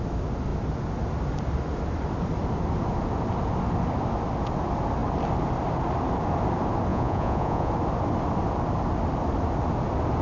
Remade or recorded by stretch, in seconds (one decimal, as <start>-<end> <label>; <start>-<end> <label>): 0.0-6.9 recorded; 6.9-7.7 remade; 7.7-10.2 recorded